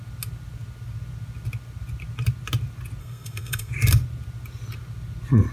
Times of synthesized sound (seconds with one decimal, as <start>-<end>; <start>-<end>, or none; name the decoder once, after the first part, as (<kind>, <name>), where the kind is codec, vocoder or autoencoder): 3.0-3.7 (codec, SNAC)